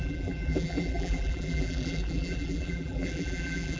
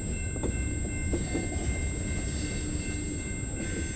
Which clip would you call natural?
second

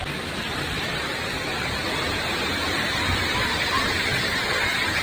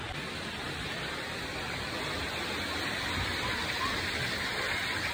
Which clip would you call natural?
second